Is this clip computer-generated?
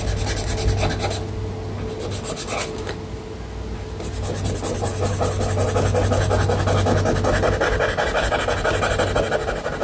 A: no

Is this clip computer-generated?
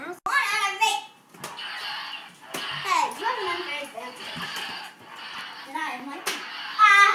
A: no